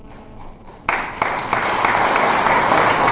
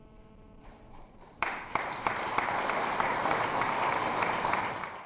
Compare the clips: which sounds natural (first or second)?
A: first